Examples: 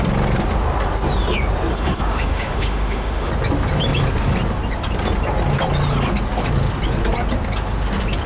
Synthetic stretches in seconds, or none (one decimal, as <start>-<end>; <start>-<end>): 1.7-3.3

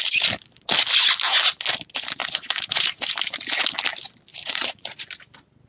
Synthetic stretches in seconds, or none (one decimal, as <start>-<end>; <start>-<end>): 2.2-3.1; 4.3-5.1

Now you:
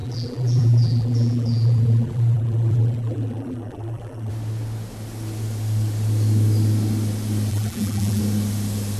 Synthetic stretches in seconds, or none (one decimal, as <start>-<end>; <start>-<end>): 0.0-4.3; 7.5-8.2

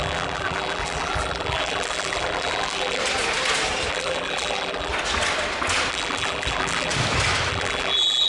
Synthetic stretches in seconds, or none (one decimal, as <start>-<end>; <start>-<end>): 0.0-3.0; 3.9-4.9; 5.9-6.9; 7.5-8.3